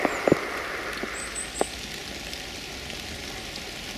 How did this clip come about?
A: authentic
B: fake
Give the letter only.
A